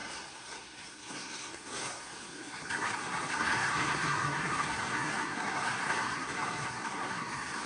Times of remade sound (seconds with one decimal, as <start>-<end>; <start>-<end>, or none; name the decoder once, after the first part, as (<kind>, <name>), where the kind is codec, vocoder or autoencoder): 0.0-7.7 (codec, SNAC)